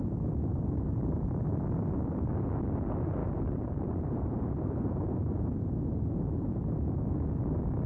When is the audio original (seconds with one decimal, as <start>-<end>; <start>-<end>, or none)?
0.0-0.5; 1.6-3.2; 5.0-7.9